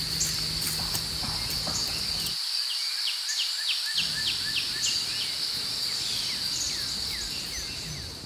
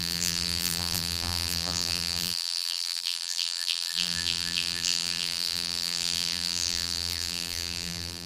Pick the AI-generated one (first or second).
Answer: second